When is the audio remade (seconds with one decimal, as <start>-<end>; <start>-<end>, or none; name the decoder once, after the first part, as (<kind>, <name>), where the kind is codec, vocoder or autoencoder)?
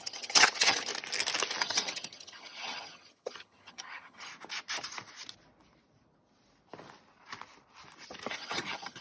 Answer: 0.0-0.9 (vocoder, HiFi-GAN); 1.6-4.3; 8.3-9.0